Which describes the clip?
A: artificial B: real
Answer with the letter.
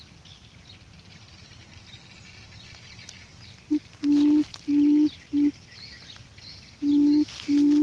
B